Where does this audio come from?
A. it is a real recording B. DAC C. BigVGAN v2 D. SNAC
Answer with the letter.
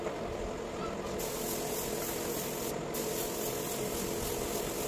A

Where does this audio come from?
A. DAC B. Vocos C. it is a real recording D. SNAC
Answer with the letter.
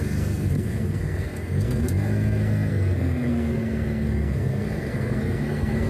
D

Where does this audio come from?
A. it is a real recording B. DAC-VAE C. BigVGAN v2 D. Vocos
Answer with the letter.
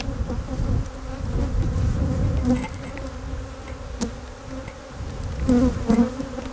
A